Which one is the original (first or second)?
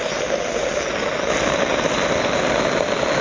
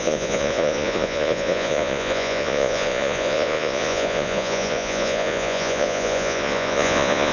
first